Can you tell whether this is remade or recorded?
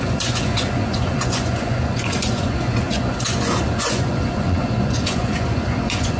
remade